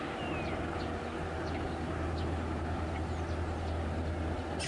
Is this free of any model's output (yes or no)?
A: yes